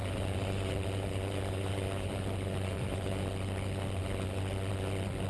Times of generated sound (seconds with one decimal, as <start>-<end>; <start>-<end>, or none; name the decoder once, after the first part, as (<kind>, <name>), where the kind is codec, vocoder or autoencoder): 0.0-3.2 (vocoder, BigVGAN v2)